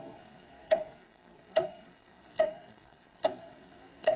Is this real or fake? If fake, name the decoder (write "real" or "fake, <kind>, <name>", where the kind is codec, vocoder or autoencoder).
fake, codec, SNAC